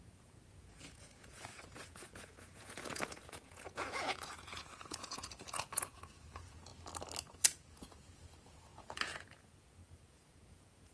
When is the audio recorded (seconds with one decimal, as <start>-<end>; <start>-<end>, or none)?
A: 6.7-7.3

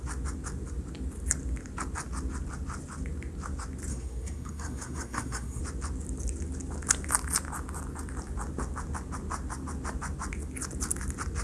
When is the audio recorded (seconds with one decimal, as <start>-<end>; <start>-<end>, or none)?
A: 0.0-3.9; 5.6-11.4

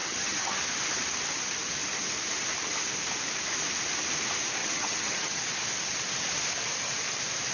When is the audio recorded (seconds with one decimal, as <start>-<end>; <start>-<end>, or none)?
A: 0.6-4.6; 5.4-7.5

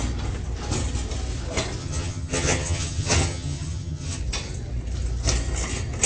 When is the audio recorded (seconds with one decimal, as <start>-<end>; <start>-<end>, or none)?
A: 0.0-1.8; 4.2-6.1

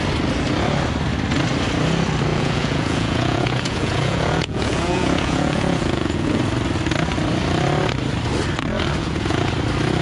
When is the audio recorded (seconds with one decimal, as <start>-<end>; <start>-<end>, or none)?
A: 0.0-2.3; 6.4-9.0; 9.5-10.0

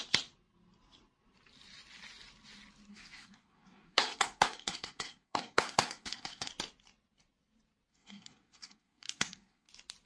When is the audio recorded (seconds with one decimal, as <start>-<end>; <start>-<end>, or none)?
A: 0.0-2.9; 6.5-7.9; 9.7-10.1

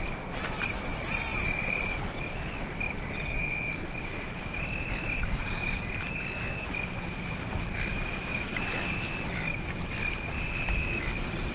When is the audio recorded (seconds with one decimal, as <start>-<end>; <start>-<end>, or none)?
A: 0.0-7.9; 8.5-11.5